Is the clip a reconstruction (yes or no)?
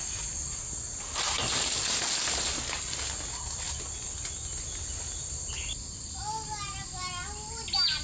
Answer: no